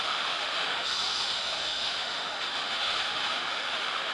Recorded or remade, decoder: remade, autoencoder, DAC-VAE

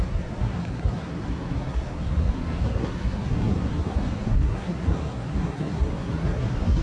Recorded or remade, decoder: remade, codec, SNAC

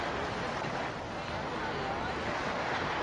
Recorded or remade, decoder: recorded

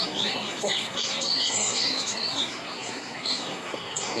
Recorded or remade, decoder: remade, codec, SNAC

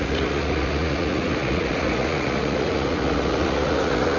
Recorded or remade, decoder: remade, vocoder, Vocos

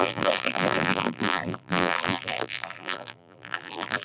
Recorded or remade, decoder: remade, vocoder, BigVGAN v2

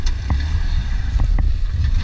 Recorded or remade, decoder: recorded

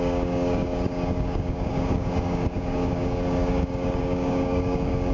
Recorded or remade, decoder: remade, codec, DAC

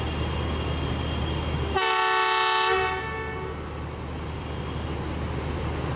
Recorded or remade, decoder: recorded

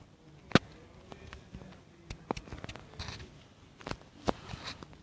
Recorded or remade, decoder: recorded